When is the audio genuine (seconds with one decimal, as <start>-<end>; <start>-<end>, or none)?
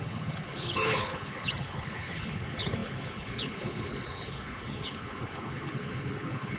none